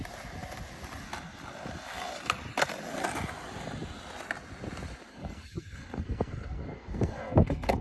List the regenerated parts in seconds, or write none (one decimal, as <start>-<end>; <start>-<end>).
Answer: 5.1-7.8